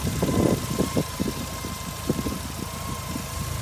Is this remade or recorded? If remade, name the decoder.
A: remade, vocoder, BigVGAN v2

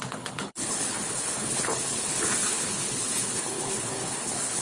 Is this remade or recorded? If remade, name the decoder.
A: remade, codec, HILCodec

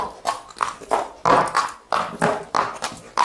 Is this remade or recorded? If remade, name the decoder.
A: recorded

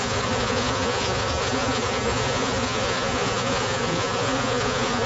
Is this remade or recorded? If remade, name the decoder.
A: remade, vocoder, Vocos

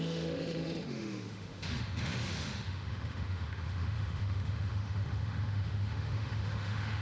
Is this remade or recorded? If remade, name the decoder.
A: remade, autoencoder, DAC-VAE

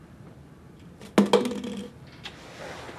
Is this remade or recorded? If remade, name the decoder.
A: recorded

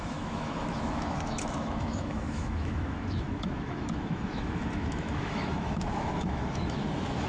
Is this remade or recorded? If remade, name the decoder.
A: remade, autoencoder, DAC-VAE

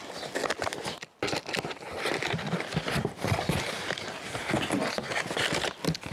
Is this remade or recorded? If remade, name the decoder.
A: recorded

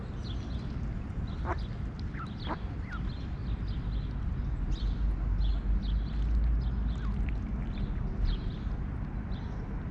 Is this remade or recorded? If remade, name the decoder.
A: recorded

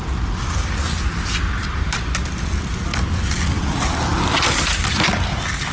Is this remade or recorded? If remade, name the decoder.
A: recorded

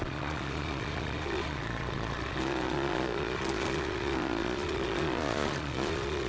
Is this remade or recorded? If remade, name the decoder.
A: remade, vocoder, Vocos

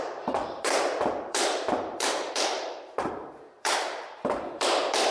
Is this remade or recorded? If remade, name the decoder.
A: remade, vocoder, BigVGAN v2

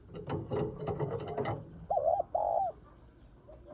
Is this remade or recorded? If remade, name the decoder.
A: recorded